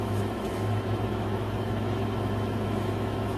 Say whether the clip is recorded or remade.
remade